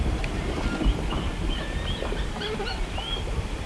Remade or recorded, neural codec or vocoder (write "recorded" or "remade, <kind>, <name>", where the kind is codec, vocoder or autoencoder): recorded